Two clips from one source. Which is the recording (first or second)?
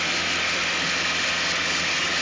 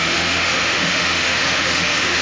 first